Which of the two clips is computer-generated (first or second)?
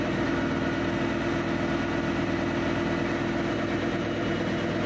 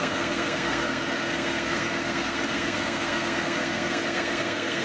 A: second